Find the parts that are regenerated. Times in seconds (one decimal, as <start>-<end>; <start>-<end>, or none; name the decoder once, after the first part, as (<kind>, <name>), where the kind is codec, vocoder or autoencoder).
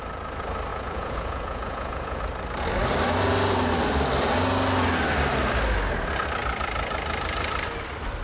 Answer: 0.7-2.2 (vocoder, Vocos)